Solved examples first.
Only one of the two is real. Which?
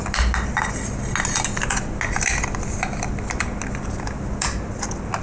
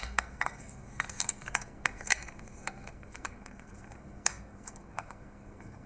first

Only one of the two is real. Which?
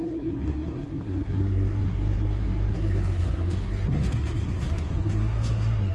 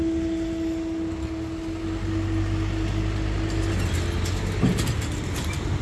second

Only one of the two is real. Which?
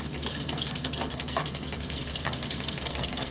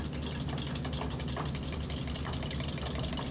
second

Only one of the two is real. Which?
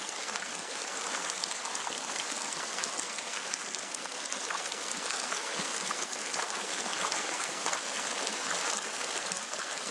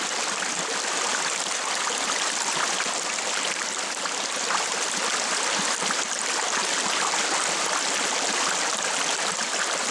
second